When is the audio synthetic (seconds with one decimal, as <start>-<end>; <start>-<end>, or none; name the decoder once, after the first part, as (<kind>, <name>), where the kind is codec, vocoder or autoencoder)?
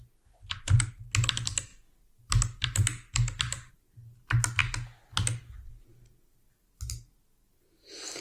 none